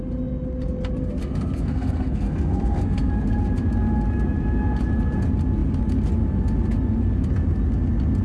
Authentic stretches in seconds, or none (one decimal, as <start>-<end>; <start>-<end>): 0.0-1.2; 3.1-8.2